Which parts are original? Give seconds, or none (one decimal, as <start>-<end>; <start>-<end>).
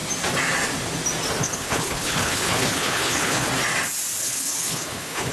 0.0-1.4; 3.5-4.2